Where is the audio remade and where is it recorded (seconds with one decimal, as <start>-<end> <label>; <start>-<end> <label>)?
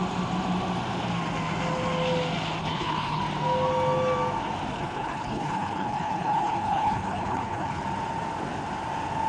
0.0-2.6 recorded; 2.6-3.2 remade; 3.2-4.7 recorded; 4.7-7.8 remade; 7.8-9.3 recorded